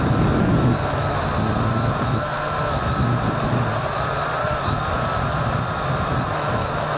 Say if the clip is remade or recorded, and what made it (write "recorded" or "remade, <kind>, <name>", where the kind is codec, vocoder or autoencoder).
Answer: recorded